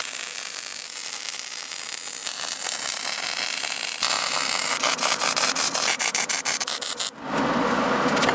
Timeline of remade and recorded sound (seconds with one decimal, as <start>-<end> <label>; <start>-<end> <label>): 0.0-8.3 recorded